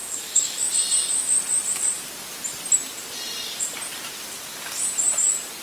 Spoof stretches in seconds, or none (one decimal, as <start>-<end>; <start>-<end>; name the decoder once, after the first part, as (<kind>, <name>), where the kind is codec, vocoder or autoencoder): 0.0-0.7 (codec, DAC)